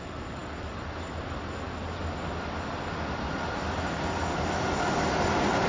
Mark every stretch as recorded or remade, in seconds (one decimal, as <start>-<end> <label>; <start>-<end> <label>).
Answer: 0.0-5.7 recorded